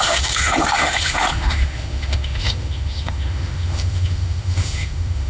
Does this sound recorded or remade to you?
remade